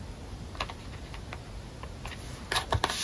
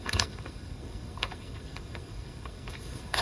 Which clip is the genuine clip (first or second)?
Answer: first